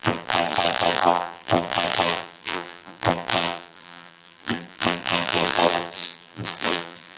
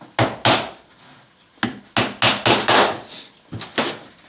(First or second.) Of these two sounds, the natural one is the second